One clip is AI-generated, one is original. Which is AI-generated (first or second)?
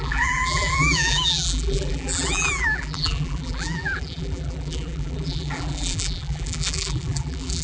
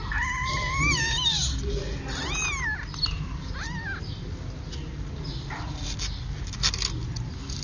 first